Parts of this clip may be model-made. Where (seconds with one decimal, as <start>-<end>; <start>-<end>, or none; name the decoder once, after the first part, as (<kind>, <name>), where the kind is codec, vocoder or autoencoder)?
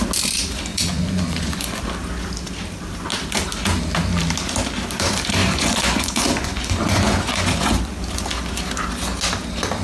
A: 0.7-1.9 (vocoder, Vocos); 5.4-7.8